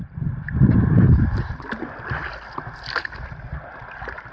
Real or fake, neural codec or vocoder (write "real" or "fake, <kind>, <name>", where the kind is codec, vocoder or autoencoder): real